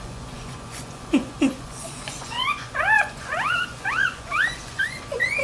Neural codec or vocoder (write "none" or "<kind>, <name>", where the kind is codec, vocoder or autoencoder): vocoder, Vocos